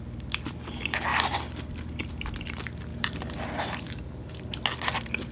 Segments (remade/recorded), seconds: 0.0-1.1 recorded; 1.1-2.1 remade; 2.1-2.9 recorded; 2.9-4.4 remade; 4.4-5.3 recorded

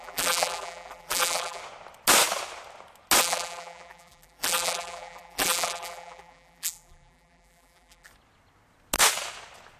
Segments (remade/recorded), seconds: 0.0-1.6 remade; 1.6-3.2 recorded; 3.2-8.1 remade; 8.1-9.8 recorded

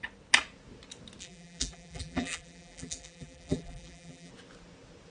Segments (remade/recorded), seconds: 0.0-1.2 recorded; 1.2-4.3 remade; 4.3-5.1 recorded

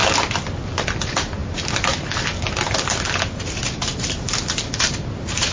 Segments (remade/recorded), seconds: 0.0-0.8 recorded; 0.8-1.4 remade; 1.4-3.8 recorded; 3.8-5.5 remade